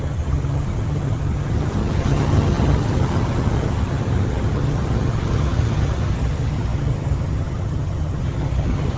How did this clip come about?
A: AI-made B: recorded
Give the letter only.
A